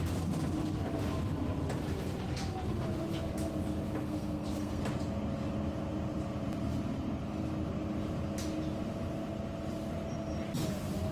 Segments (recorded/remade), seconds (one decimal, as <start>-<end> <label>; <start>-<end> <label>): 0.0-4.0 recorded; 4.0-4.8 remade; 4.8-11.1 recorded